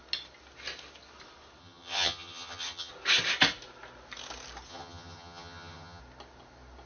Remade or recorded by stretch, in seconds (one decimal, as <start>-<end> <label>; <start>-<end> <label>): 0.0-1.6 recorded; 1.6-2.9 remade; 2.9-4.7 recorded; 4.7-6.0 remade; 6.0-6.9 recorded